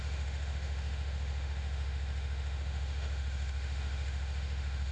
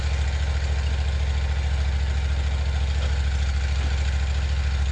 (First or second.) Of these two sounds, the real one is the second